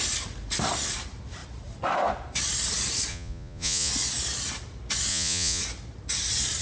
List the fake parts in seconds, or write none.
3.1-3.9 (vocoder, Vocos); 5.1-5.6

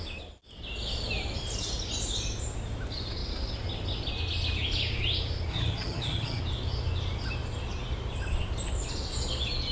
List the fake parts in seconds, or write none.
5.5-6.4 (vocoder, HiFi-GAN)

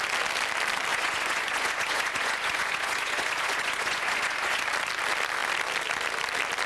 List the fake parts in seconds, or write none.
0.9-4.6 (vocoder, Vocos)